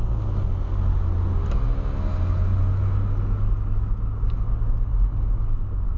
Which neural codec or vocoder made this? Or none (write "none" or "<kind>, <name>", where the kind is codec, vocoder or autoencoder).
none